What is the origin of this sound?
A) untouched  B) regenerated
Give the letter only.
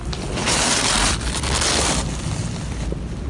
A